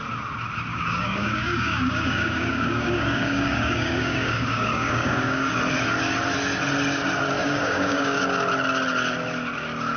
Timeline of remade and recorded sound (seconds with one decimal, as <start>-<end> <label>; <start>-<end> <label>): 0.0-0.7 recorded; 0.7-5.6 remade; 5.6-7.4 recorded; 7.4-8.2 remade; 8.2-10.0 recorded